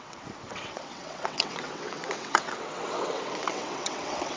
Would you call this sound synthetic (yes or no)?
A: yes